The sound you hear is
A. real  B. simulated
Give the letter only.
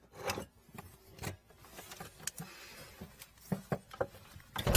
A